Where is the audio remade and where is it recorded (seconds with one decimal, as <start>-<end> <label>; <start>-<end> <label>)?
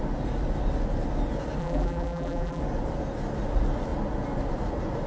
0.0-1.6 recorded; 1.6-2.6 remade; 2.6-5.1 recorded